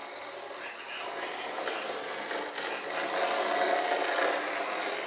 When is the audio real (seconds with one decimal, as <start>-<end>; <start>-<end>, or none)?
0.0-5.1